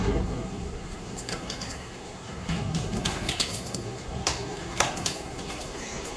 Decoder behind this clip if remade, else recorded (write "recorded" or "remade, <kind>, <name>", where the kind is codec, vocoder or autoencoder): remade, codec, SNAC